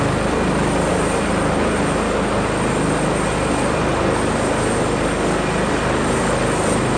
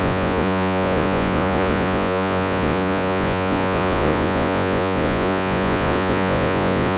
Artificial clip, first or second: second